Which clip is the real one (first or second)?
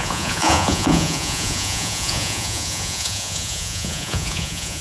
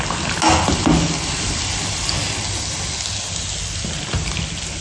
second